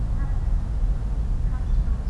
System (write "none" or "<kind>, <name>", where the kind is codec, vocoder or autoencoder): none